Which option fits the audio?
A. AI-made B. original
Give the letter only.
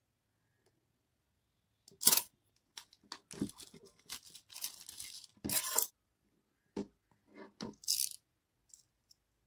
B